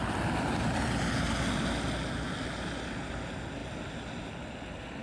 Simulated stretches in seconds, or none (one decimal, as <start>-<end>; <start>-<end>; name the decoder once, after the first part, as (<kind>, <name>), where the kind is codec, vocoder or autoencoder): none